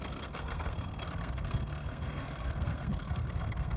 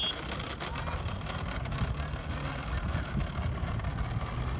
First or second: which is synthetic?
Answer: first